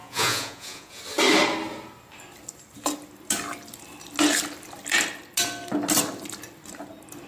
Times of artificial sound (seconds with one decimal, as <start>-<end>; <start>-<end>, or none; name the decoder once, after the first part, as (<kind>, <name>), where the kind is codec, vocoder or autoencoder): 0.0-1.0 (vocoder, Vocos)